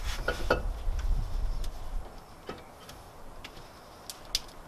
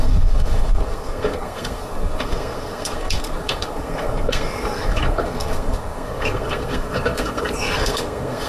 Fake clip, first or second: second